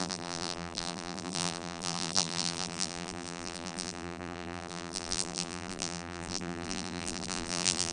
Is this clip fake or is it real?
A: fake